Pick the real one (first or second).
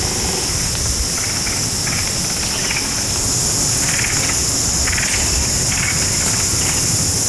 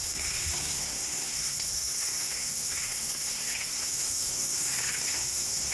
first